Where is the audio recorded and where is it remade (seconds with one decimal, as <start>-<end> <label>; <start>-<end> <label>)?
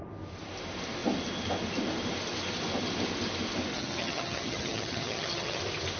0.0-3.7 recorded; 3.7-5.6 remade; 5.6-6.0 recorded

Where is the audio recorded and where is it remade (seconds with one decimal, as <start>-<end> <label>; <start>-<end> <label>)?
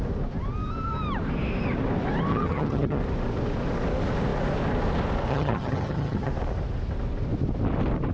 0.0-2.3 recorded; 2.3-3.0 remade; 3.0-5.3 recorded; 5.3-6.3 remade; 6.3-8.1 recorded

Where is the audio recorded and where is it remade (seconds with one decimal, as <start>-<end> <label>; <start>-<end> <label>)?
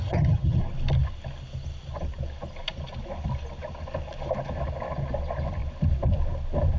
0.0-0.6 remade; 0.6-6.8 recorded